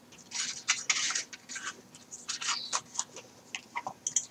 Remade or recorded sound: recorded